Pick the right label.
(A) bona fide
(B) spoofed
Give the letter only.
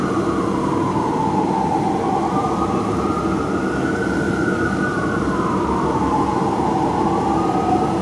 B